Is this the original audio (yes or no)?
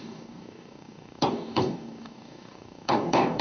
no